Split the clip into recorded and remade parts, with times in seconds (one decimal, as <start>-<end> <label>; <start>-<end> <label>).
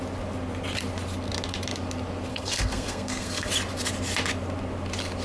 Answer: 0.0-2.3 recorded; 2.3-3.5 remade; 3.5-5.2 recorded